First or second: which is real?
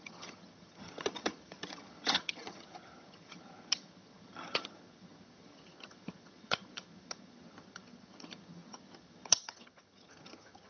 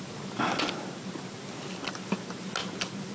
second